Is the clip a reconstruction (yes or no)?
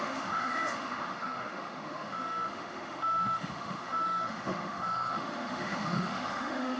yes